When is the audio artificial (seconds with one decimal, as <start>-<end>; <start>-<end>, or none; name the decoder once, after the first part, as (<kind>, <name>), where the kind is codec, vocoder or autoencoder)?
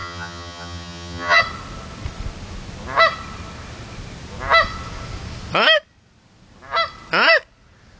0.0-1.4 (vocoder, HiFi-GAN)